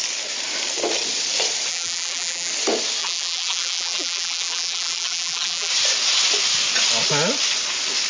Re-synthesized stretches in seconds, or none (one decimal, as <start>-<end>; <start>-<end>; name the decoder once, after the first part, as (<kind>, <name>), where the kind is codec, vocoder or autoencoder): 1.7-2.5 (vocoder, BigVGAN v2); 3.0-5.7